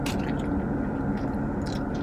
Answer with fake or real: real